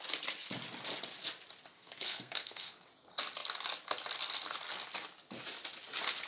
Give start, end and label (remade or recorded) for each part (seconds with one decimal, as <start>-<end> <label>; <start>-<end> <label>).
0.0-1.8 recorded; 1.8-2.7 remade; 2.7-6.3 recorded